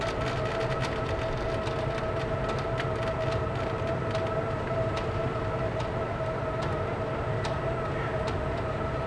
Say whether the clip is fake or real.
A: real